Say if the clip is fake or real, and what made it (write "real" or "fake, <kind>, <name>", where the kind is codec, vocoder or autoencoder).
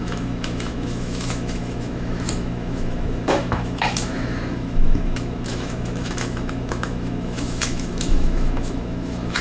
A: fake, autoencoder, DAC-VAE